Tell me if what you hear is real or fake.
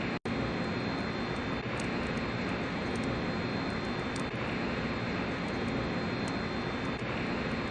real